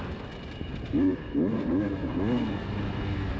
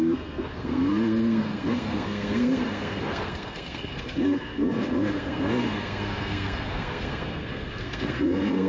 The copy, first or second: second